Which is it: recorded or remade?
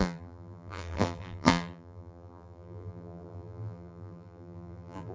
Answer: remade